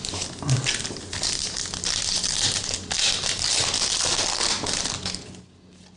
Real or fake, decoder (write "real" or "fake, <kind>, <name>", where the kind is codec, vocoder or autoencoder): real